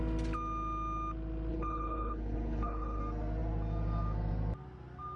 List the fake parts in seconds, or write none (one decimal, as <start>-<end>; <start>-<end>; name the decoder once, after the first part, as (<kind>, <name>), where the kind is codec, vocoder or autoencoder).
1.5-3.0 (codec, HILCodec)